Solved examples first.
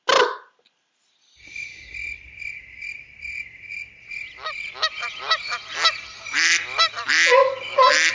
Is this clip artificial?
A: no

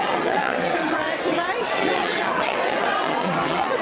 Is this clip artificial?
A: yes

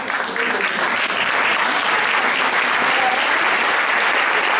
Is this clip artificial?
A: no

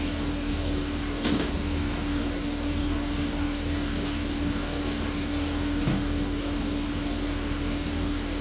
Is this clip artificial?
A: yes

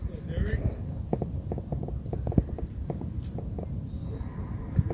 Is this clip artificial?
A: no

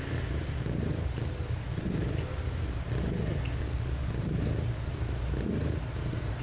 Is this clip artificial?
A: no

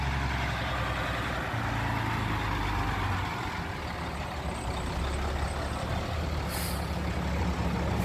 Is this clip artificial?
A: no